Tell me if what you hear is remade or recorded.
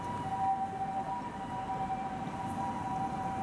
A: recorded